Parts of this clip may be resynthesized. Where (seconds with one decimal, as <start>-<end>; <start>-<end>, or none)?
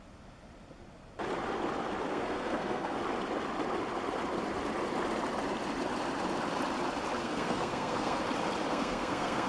2.1-3.0; 7.2-8.2; 8.7-9.5